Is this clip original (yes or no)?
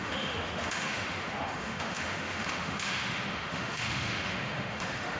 no